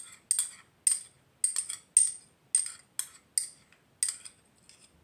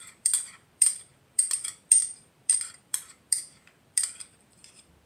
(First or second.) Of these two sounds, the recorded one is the first